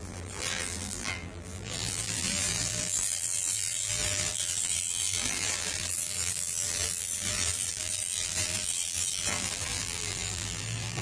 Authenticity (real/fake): fake